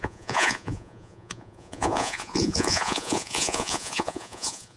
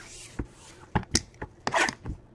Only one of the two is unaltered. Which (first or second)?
second